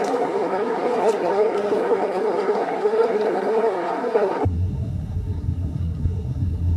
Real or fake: fake